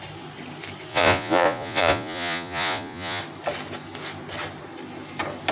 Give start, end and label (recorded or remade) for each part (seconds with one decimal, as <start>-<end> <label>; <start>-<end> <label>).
0.0-0.9 recorded; 0.9-3.2 remade; 3.2-5.5 recorded